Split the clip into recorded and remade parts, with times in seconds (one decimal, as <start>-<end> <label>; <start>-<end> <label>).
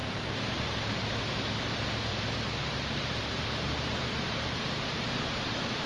0.0-1.2 remade; 1.2-2.1 recorded; 2.1-5.9 remade